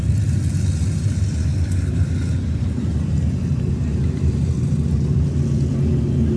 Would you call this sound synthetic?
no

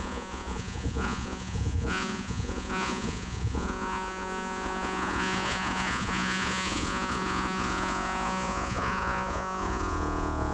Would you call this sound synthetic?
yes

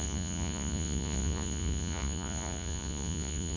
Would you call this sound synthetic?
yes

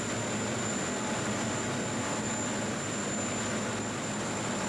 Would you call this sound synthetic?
no